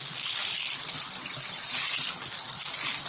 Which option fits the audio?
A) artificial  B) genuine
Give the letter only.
B